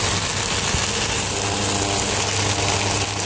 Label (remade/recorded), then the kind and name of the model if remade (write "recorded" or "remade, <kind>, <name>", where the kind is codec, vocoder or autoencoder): recorded